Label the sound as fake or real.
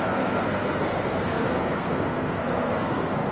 fake